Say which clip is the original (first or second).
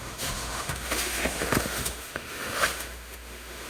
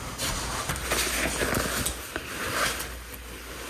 second